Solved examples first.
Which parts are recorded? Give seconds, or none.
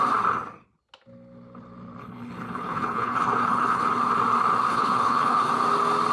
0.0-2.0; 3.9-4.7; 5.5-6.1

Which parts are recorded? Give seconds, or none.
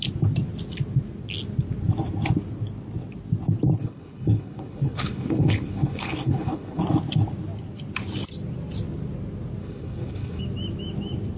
0.0-3.8; 6.8-9.6; 10.4-11.4